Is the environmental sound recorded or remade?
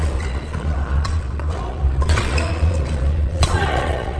remade